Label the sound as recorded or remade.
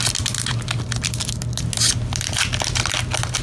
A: recorded